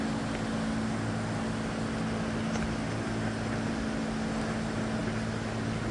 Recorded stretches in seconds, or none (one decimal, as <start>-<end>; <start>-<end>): 0.0-5.9